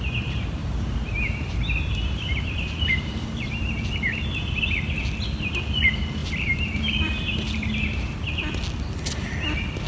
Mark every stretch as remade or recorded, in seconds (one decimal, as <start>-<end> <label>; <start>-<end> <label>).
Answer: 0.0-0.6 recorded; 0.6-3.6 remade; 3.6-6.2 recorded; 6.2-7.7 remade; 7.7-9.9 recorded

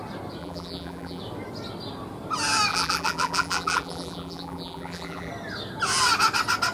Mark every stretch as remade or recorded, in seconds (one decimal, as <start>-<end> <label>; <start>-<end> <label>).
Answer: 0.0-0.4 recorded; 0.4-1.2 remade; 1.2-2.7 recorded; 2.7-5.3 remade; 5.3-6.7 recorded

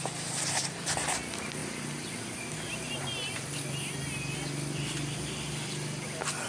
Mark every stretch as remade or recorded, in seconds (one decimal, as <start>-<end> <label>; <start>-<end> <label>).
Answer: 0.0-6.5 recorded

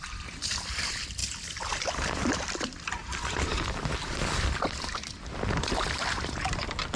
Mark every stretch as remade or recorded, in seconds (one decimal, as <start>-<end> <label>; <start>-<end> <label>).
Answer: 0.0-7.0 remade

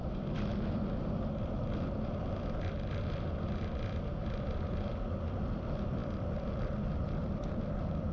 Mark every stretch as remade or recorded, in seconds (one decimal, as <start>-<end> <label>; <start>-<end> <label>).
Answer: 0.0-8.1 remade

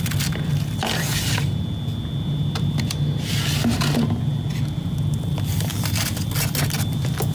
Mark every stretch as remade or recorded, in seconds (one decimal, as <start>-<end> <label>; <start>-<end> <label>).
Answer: 0.0-7.3 recorded

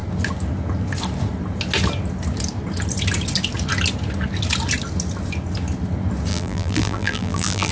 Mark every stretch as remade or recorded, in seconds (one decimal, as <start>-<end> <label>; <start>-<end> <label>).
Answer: 0.0-6.3 recorded; 6.3-7.7 remade